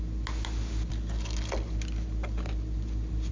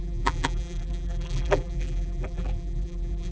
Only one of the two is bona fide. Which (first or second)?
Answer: first